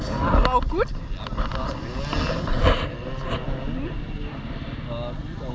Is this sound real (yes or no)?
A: yes